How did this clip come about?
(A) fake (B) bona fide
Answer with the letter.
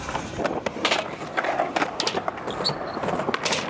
B